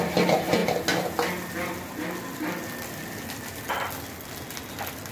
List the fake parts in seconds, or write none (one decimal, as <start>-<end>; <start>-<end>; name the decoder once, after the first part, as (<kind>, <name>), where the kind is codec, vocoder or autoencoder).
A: none